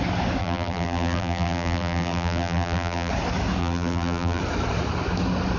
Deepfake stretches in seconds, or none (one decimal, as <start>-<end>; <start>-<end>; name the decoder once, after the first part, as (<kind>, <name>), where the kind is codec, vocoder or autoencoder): 0.4-3.1 (vocoder, BigVGAN v2); 3.6-4.4